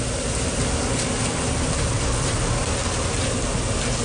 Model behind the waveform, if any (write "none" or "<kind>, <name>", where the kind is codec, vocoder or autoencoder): none